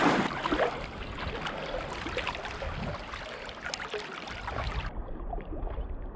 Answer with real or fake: real